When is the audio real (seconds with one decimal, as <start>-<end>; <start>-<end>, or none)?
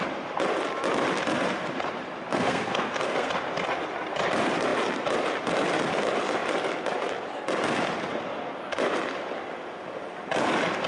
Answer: 0.0-2.3; 3.3-10.9